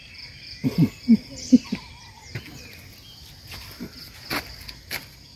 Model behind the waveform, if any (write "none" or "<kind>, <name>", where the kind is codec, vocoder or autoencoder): none